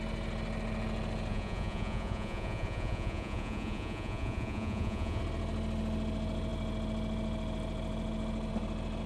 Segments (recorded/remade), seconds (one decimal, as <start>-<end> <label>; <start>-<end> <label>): 0.0-1.3 recorded; 1.3-5.2 remade; 5.2-9.1 recorded